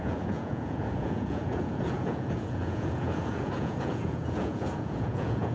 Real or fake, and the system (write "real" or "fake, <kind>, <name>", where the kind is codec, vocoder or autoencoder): fake, vocoder, Vocos